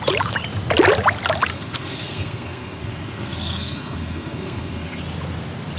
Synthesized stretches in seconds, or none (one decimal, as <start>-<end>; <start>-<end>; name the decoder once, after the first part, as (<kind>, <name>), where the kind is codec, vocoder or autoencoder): 1.5-5.0 (codec, SNAC)